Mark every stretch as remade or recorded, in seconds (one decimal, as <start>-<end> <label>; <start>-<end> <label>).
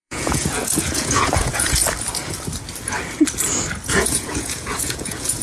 0.0-1.8 remade; 1.8-3.9 recorded; 3.9-5.4 remade